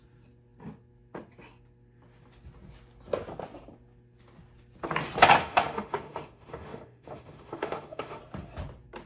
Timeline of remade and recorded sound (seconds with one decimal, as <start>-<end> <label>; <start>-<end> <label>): 0.0-5.4 recorded; 5.4-8.2 remade; 8.2-9.1 recorded

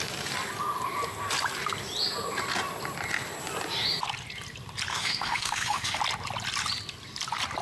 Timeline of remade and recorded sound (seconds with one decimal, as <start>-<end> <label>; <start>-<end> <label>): 0.0-4.9 recorded; 4.9-6.0 remade; 6.0-7.6 recorded

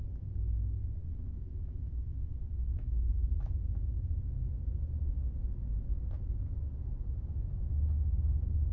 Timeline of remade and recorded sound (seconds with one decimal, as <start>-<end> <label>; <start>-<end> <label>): 0.0-1.0 recorded; 1.0-4.4 remade; 4.4-8.7 recorded

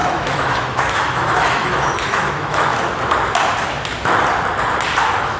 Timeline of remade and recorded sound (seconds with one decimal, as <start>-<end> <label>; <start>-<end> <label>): 0.0-2.7 remade; 2.7-5.0 recorded; 5.0-5.4 remade

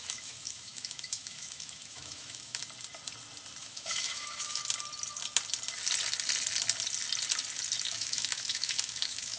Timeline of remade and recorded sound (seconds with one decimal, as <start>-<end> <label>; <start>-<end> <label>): 0.0-2.6 remade; 2.6-3.6 recorded; 3.6-4.6 remade; 4.6-7.9 recorded; 7.9-9.4 remade

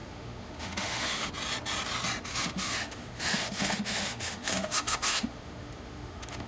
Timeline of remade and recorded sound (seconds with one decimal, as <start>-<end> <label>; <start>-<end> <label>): 0.0-1.3 remade; 1.3-2.3 recorded; 2.3-6.5 remade